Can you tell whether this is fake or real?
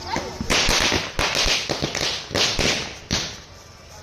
real